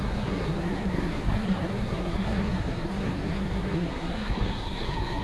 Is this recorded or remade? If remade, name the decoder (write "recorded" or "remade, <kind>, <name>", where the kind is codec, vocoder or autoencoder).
remade, codec, SNAC